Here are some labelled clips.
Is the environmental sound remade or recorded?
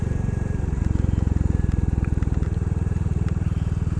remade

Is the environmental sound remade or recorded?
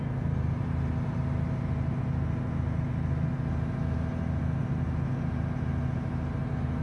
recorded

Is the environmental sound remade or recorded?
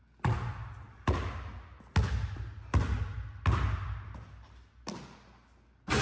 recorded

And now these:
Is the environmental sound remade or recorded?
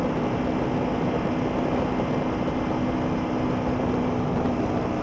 recorded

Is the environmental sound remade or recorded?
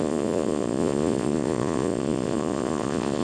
remade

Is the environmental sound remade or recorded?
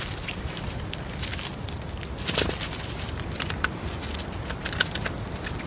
recorded